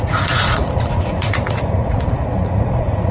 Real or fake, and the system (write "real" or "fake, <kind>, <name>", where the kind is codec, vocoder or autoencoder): fake, vocoder, Vocos